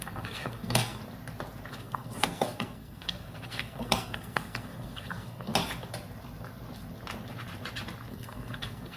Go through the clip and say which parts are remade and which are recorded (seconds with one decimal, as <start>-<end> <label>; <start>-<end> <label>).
0.0-1.0 remade; 1.0-1.7 recorded; 1.7-5.5 remade; 5.5-8.1 recorded; 8.1-9.0 remade